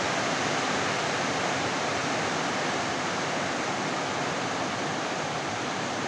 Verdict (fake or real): real